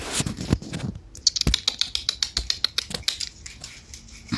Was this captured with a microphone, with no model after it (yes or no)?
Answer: yes